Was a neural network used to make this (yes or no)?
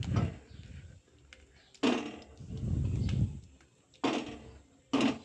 no